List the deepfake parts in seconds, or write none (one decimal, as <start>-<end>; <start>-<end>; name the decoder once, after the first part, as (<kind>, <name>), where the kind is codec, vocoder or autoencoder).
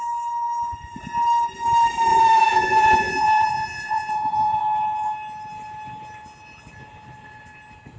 2.1-4.6 (vocoder, Vocos)